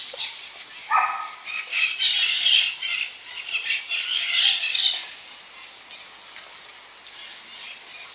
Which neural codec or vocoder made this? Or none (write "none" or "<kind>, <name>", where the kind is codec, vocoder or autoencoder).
none